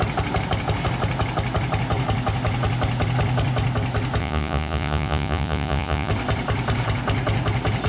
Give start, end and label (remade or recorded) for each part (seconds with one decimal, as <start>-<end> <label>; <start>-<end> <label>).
0.0-4.2 recorded; 4.2-6.1 remade; 6.1-7.9 recorded